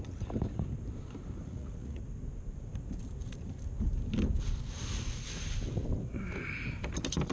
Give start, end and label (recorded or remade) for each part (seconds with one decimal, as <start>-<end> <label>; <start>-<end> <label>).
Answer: 0.0-1.4 recorded; 1.4-2.0 remade; 2.0-7.3 recorded

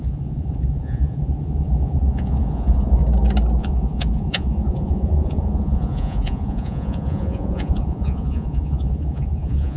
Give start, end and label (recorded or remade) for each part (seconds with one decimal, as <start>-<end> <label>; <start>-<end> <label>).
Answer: 0.0-3.0 remade; 3.0-3.6 recorded; 3.6-9.8 remade

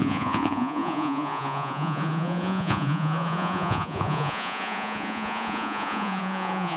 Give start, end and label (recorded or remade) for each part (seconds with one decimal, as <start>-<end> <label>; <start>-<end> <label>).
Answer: 0.0-6.8 remade

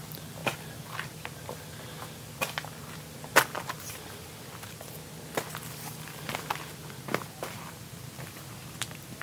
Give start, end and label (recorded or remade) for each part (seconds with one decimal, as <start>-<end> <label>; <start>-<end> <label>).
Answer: 0.0-9.2 recorded

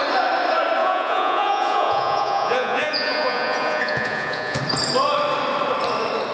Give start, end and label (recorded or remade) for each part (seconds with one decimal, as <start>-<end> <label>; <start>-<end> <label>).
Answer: 0.0-0.8 recorded; 0.8-4.6 remade; 4.6-6.3 recorded

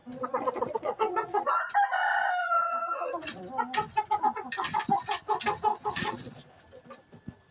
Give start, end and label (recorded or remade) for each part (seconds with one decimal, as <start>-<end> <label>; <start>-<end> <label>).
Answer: 0.0-1.5 remade; 1.5-2.4 recorded; 2.4-3.4 remade; 3.4-5.7 recorded; 5.7-6.5 remade; 6.5-7.5 recorded